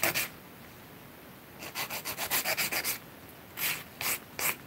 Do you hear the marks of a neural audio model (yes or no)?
no